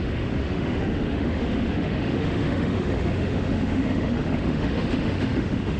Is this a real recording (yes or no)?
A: no